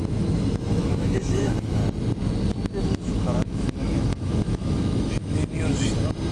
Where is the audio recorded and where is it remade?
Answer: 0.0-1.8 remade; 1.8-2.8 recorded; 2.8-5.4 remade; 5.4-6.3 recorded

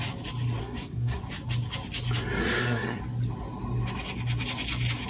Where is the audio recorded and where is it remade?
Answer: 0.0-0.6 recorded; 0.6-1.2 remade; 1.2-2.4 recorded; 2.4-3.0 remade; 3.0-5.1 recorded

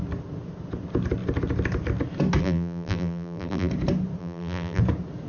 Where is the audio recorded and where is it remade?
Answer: 0.0-2.4 recorded; 2.4-3.7 remade; 3.7-4.2 recorded; 4.2-4.8 remade; 4.8-5.3 recorded